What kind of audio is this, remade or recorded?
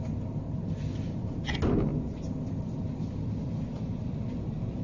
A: recorded